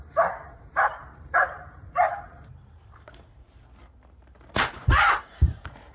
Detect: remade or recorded remade